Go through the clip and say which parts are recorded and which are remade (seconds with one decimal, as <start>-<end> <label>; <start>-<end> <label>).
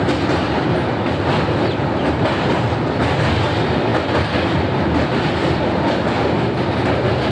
0.0-7.3 recorded